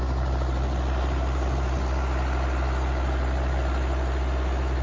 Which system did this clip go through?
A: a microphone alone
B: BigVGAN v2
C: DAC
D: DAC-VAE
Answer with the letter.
A